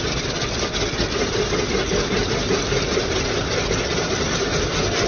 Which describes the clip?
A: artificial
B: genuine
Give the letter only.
B